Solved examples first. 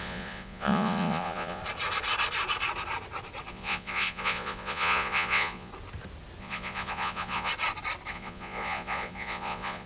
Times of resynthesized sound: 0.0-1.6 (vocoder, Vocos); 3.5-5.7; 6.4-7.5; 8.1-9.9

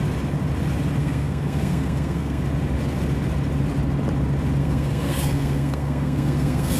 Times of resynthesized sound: 1.0-2.4 (codec, SNAC); 4.6-6.8